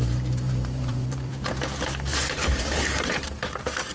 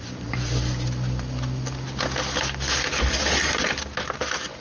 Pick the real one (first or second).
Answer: second